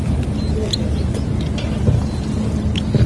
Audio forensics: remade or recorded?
recorded